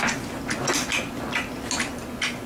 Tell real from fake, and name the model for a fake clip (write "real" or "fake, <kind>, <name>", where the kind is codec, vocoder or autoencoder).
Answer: real